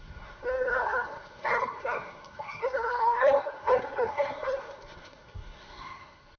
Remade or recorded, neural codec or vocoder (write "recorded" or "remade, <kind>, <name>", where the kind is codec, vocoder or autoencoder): remade, codec, SNAC